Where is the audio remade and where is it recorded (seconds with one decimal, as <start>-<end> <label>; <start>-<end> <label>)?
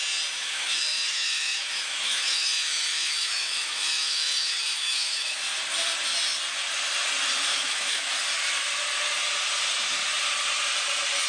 0.0-0.4 recorded; 0.4-5.4 remade; 5.4-7.5 recorded; 7.5-8.1 remade; 8.1-11.3 recorded